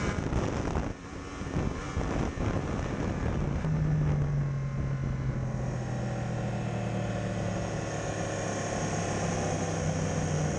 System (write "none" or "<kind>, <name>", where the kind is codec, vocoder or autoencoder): none